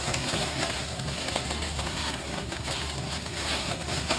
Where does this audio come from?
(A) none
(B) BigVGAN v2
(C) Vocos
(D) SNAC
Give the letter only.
D